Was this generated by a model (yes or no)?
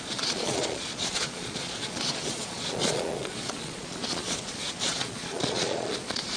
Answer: yes